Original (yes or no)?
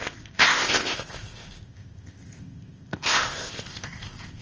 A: no